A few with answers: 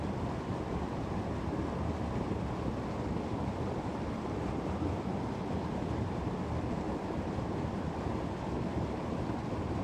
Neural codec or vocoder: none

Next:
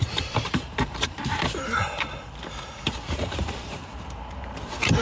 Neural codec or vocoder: vocoder, BigVGAN v2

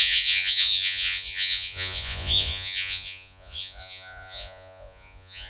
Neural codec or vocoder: vocoder, Vocos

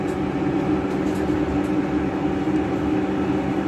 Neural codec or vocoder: none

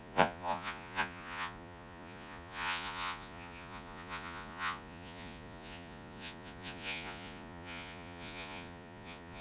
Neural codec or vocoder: vocoder, Vocos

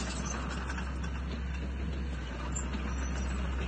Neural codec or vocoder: none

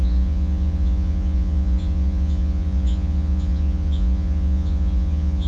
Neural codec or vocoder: vocoder, Vocos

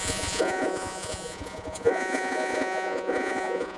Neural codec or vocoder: vocoder, Vocos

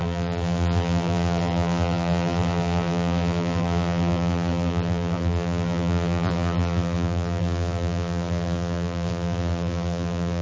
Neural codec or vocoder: vocoder, BigVGAN v2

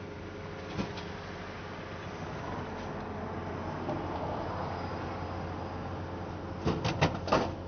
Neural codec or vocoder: none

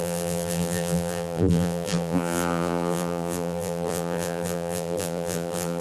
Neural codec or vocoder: vocoder, BigVGAN v2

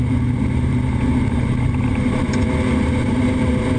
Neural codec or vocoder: vocoder, BigVGAN v2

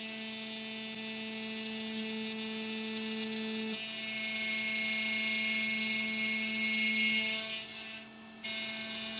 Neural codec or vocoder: none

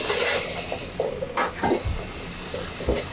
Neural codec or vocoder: none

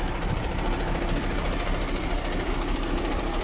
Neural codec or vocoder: vocoder, BigVGAN v2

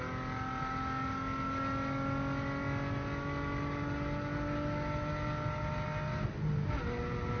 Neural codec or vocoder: none